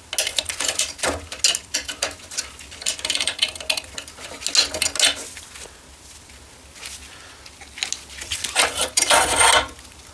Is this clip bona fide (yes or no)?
yes